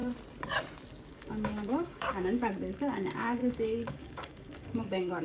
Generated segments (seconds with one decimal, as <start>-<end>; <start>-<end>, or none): 1.1-5.2